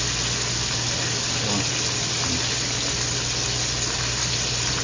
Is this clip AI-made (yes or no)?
no